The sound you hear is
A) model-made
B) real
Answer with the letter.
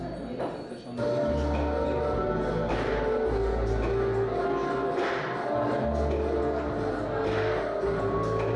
B